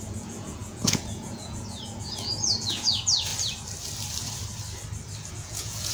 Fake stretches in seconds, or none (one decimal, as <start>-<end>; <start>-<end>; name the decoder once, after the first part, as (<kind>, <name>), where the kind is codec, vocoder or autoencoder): 0.0-3.3 (vocoder, Vocos); 5.3-5.9